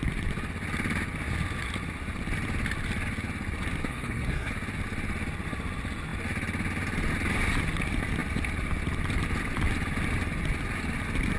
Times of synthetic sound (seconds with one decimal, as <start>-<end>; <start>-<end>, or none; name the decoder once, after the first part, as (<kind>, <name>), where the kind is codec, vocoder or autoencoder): 3.9-4.5 (codec, SNAC)